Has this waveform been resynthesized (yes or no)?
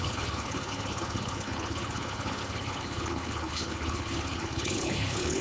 yes